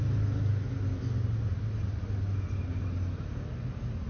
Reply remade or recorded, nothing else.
recorded